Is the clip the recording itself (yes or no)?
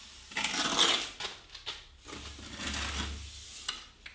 yes